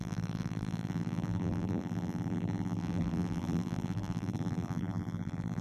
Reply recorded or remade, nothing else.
remade